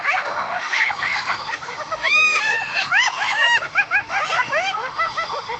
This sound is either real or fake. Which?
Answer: fake